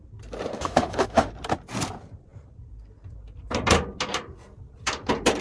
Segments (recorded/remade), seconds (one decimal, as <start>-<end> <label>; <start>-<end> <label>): 0.0-0.5 recorded; 0.5-1.3 remade; 1.3-5.4 recorded